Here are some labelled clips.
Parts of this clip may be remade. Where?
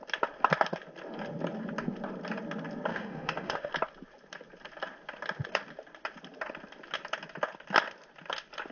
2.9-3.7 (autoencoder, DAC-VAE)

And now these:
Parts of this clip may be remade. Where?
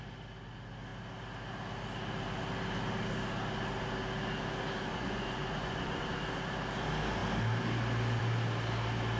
4.9-6.0 (vocoder, Vocos)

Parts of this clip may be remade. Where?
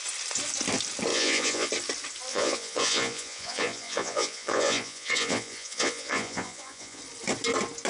1.1-1.7 (vocoder, Vocos); 2.3-7.0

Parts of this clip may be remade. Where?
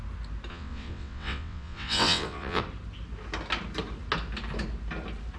0.5-2.6 (vocoder, WaveNeXt)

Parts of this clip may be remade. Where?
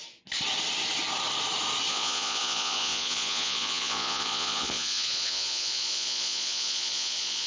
1.9-7.5 (vocoder, Vocos)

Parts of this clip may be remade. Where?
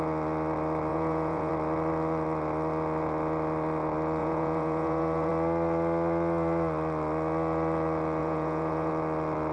0.9-1.5 (vocoder, Vocos); 4.2-5.3; 8.2-8.9